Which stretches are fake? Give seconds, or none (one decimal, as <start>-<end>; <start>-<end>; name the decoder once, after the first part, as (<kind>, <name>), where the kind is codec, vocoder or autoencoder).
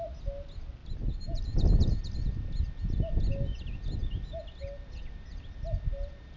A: 0.8-2.4 (vocoder, BigVGAN v2)